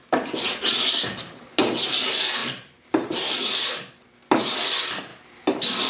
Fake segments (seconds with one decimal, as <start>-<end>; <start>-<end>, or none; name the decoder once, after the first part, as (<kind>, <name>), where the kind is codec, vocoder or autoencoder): none